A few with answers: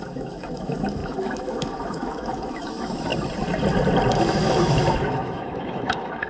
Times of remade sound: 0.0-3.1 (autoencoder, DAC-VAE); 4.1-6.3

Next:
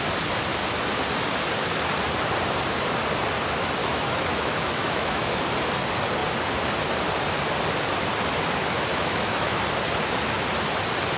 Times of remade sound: 3.8-5.4 (autoencoder, DAC-VAE); 8.9-9.6

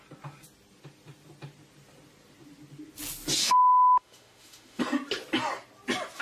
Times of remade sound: 3.4-4.8 (autoencoder, DAC-VAE)

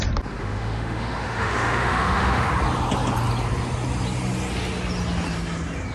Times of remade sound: 0.4-2.5 (autoencoder, DAC-VAE)